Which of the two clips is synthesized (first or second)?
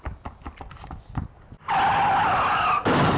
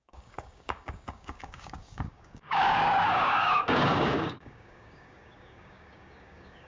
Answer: second